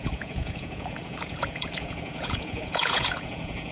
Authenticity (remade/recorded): remade